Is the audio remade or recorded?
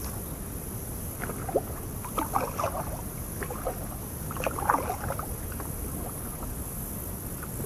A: recorded